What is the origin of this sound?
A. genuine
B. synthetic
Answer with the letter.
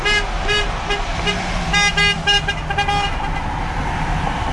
A